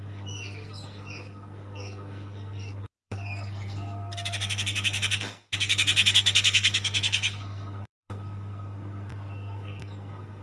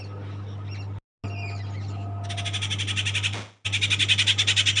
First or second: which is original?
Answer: second